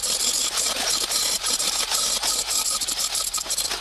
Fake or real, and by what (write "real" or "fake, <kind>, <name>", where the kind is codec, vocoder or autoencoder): fake, vocoder, BigVGAN v2